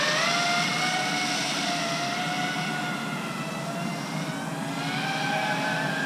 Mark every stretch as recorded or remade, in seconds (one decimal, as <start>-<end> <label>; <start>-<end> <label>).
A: 0.0-6.1 recorded